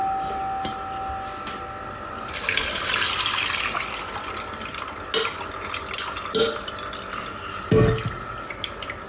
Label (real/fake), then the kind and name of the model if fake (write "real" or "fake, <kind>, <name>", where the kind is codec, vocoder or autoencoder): real